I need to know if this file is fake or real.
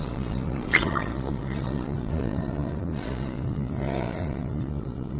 fake